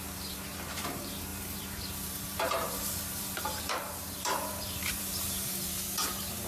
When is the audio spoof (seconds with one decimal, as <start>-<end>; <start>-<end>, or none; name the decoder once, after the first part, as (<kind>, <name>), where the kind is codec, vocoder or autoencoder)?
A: 0.0-6.5 (vocoder, BigVGAN v2)